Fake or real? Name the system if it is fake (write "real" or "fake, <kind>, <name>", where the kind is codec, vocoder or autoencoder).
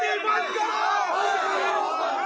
real